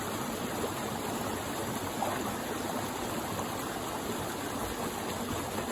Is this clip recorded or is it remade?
recorded